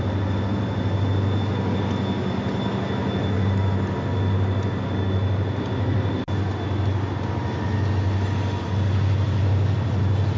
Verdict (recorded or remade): recorded